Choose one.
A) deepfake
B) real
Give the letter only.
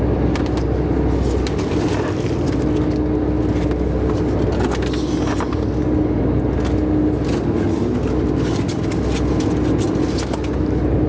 B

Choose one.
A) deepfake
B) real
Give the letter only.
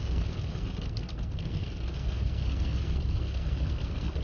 A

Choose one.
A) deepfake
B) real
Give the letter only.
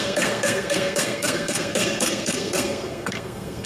A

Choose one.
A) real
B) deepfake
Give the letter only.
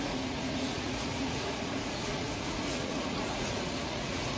B